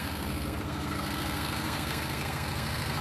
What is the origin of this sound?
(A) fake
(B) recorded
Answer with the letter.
A